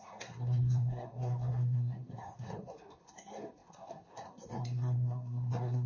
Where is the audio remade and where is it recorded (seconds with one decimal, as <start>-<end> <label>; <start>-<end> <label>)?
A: 0.0-5.9 remade